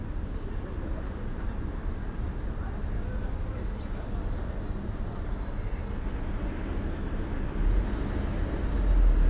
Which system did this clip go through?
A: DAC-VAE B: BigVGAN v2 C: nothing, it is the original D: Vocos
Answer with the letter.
C